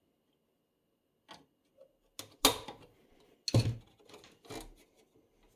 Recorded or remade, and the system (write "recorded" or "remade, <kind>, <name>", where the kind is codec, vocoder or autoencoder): recorded